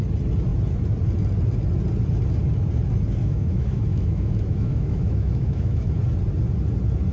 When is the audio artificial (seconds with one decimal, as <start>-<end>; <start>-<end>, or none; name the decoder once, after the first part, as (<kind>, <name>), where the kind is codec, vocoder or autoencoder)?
3.2-6.0 (autoencoder, DAC-VAE)